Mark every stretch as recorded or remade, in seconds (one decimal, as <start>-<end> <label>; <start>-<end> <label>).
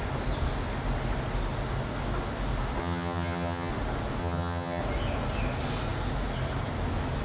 0.0-2.8 recorded; 2.8-3.7 remade; 3.7-4.2 recorded; 4.2-4.8 remade; 4.8-7.2 recorded